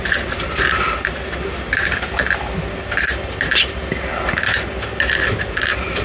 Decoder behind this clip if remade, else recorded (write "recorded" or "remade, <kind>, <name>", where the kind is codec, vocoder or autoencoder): recorded